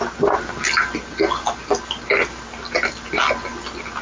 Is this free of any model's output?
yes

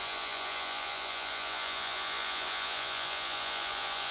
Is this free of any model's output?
no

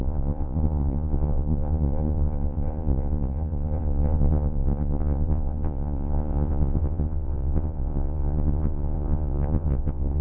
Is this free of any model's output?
no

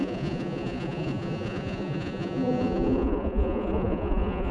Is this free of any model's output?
no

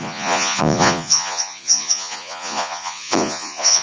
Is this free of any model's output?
no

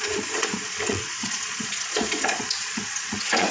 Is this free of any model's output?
no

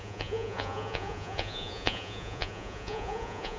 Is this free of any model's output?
no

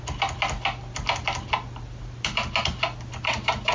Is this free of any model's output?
yes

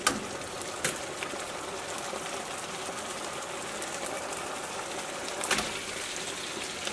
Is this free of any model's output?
yes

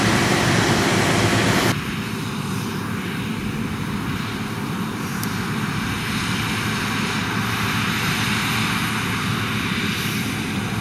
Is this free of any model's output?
yes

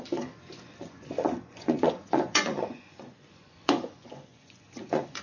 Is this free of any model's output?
no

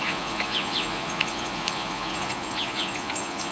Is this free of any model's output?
no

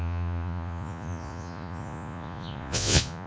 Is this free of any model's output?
no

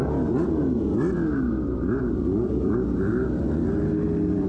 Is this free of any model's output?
yes